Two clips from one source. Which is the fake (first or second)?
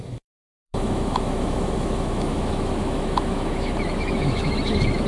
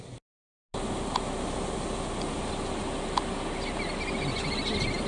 first